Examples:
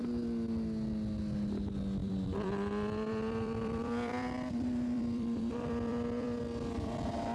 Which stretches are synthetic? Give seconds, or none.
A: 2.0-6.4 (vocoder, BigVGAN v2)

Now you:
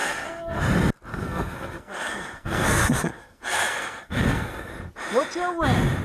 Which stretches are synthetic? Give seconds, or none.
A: 0.0-0.6 (codec, SNAC); 1.1-4.7

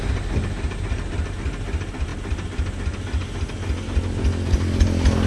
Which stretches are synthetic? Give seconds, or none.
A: none

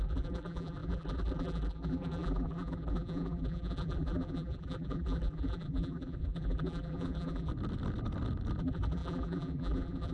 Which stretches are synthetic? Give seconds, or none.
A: 0.0-7.5 (vocoder, BigVGAN v2); 8.6-10.1

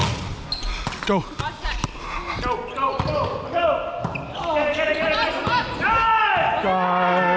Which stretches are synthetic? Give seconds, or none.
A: none

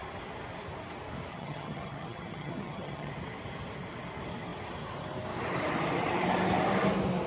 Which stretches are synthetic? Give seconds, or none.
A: 1.3-3.1 (vocoder, HiFi-GAN)